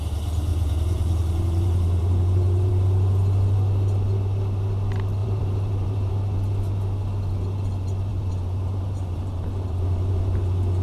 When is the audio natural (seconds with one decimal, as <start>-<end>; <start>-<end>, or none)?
0.0-0.5; 2.7-5.2; 6.1-8.1; 10.4-10.8